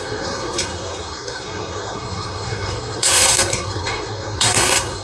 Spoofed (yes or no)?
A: yes